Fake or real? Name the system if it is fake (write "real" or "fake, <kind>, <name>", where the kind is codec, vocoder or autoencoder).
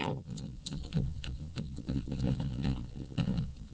fake, vocoder, Vocos